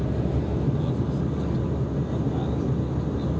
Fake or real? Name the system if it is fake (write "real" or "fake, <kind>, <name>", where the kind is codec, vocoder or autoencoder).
real